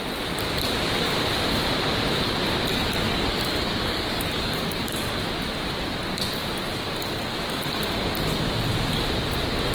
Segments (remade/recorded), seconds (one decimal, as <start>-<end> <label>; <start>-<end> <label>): 0.0-2.7 recorded; 2.7-5.2 remade; 5.2-9.7 recorded